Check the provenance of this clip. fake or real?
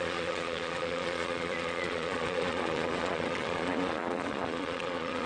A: fake